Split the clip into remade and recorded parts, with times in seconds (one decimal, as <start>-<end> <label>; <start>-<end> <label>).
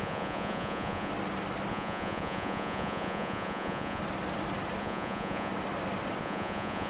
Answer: 0.0-1.1 remade; 1.1-1.7 recorded; 1.7-4.0 remade; 4.0-4.8 recorded; 4.8-5.5 remade; 5.5-6.2 recorded; 6.2-6.9 remade